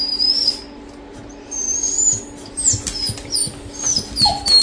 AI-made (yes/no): no